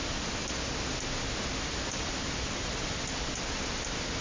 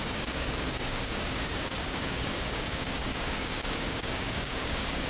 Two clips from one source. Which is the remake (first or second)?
second